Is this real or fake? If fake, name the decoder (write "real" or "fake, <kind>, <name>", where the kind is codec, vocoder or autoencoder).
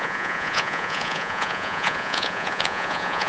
fake, vocoder, Vocos